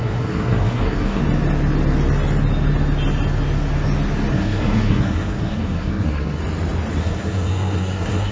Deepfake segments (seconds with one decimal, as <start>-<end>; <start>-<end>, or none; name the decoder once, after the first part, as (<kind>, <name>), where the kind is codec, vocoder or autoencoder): 0.0-1.2 (codec, SNAC); 4.3-6.4; 7.0-8.3